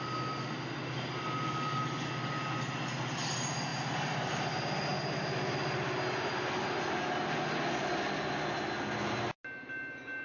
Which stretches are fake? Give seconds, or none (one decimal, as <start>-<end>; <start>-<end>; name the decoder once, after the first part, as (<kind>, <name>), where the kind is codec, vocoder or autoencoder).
none